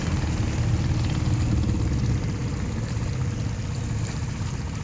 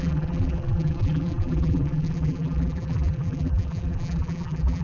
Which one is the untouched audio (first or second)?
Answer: first